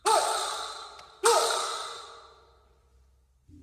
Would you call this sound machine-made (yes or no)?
no